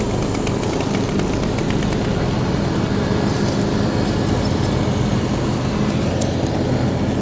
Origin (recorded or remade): recorded